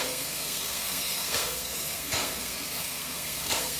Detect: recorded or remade remade